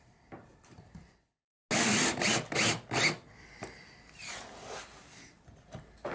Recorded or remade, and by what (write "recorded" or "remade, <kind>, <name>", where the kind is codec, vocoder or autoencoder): recorded